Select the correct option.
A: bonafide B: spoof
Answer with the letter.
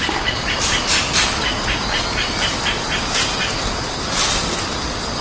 A